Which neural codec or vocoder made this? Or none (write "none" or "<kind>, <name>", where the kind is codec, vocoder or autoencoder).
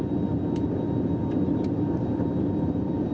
none